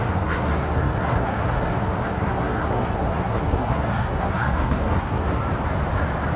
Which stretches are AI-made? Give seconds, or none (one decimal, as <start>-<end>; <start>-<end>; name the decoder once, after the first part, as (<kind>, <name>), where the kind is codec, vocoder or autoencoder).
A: 0.0-5.4 (codec, SNAC)